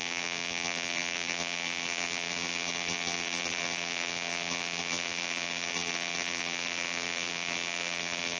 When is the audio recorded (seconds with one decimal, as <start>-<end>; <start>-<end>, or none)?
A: none